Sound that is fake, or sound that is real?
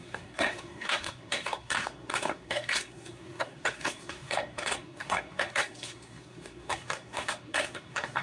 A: fake